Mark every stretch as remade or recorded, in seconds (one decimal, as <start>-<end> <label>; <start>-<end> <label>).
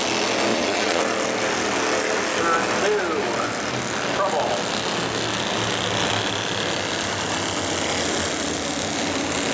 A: 0.0-0.5 recorded; 0.5-1.0 remade; 1.0-9.5 recorded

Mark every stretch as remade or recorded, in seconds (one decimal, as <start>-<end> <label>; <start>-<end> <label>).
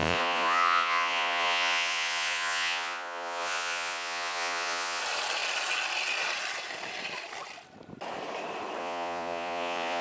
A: 0.0-5.0 remade; 5.0-8.8 recorded; 8.8-10.0 remade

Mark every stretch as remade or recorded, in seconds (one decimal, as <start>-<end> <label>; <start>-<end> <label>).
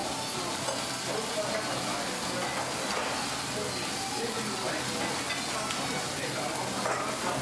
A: 0.0-7.4 recorded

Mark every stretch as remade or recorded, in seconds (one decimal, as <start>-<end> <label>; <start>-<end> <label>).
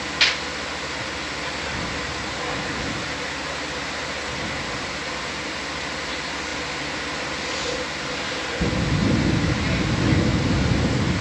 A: 0.0-6.5 recorded; 6.5-7.5 remade; 7.5-9.0 recorded; 9.0-9.5 remade; 9.5-11.2 recorded